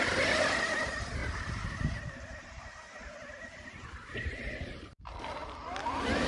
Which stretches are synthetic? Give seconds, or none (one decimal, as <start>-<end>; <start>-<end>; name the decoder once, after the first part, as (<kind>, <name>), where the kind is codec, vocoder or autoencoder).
1.2-5.0 (vocoder, BigVGAN v2)